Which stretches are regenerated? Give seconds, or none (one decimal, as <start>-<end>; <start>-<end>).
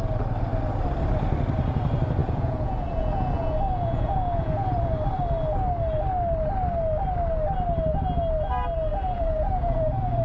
2.2-4.9; 8.9-10.2